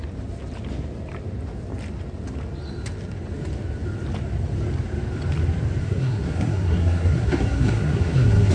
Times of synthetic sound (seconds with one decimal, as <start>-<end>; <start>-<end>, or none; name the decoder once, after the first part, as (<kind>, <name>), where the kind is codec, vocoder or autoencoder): 5.8-8.5 (codec, SNAC)